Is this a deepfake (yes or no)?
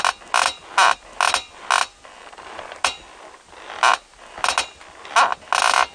no